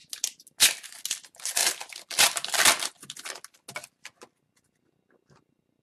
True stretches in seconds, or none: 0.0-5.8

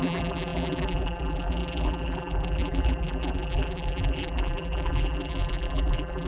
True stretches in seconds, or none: none

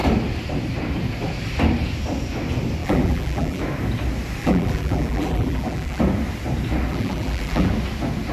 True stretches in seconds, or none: 0.0-2.8; 3.6-4.4; 6.0-6.9; 7.7-8.3

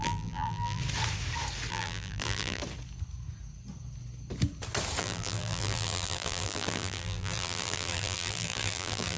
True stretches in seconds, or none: 0.8-1.7; 2.6-5.0

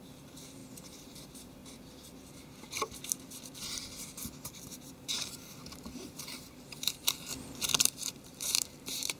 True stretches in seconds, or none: 1.6-4.5; 7.3-7.8

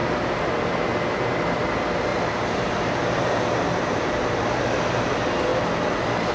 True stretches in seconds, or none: 0.0-2.1; 5.1-6.3

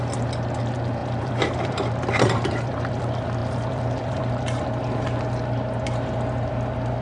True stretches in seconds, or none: 0.0-1.0; 3.0-3.4; 4.2-7.0

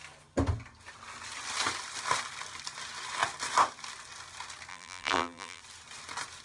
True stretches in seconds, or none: 0.0-4.7; 5.6-6.4